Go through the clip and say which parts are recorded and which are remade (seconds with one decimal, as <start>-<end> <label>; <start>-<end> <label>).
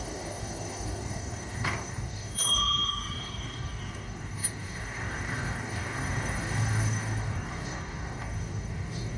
0.0-9.2 remade